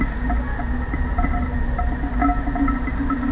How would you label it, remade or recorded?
recorded